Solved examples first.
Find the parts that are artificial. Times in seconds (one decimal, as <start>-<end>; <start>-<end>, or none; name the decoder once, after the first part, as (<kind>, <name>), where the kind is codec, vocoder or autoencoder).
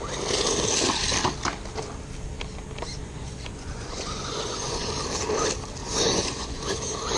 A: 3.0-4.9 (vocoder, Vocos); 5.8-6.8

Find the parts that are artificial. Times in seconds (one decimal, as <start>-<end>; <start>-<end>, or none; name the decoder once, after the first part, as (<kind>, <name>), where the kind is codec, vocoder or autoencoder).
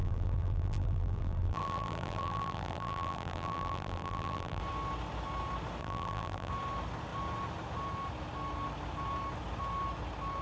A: 0.0-4.6 (vocoder, BigVGAN v2); 5.8-6.5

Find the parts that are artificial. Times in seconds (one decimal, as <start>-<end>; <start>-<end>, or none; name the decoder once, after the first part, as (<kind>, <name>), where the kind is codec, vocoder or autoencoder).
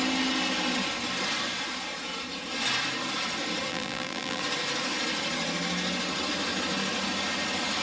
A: 3.7-4.4 (vocoder, BigVGAN v2)